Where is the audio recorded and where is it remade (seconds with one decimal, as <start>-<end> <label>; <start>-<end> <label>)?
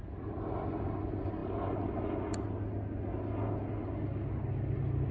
0.0-5.1 recorded